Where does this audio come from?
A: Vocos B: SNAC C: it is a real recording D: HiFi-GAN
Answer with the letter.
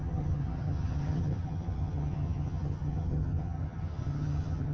D